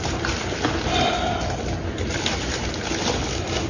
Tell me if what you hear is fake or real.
real